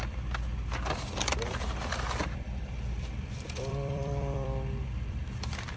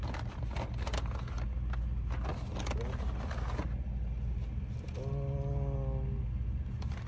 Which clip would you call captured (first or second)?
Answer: second